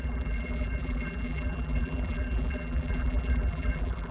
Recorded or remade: remade